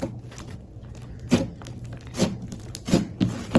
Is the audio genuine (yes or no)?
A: yes